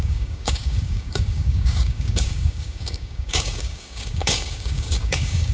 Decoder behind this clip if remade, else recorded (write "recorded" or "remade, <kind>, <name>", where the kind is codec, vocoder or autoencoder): remade, codec, DAC